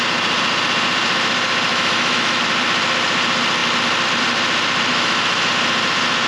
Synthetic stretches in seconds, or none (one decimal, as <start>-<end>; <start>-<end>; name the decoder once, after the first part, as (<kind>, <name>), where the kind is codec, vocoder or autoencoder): 1.7-2.4 (autoencoder, DAC-VAE); 4.9-5.5